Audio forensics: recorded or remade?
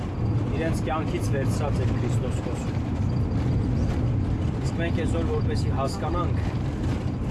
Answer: recorded